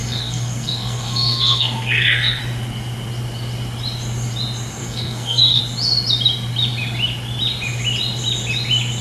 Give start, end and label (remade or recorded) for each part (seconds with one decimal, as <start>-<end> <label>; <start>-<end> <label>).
0.0-2.4 remade; 2.4-4.8 recorded; 4.8-5.6 remade; 5.6-9.0 recorded